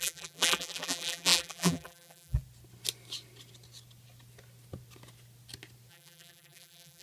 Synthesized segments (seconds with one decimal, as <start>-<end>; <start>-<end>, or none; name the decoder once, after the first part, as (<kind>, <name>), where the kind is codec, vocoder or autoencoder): 0.0-2.4 (vocoder, BigVGAN v2); 5.9-7.0